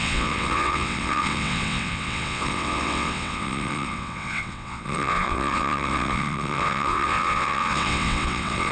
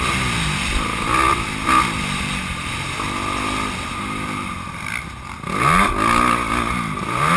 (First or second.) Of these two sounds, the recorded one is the second